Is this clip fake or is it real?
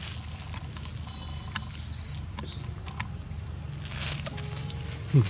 real